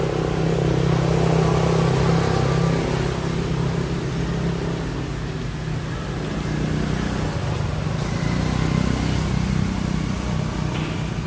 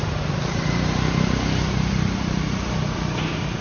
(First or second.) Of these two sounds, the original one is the first